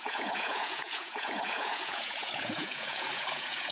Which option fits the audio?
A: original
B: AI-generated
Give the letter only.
B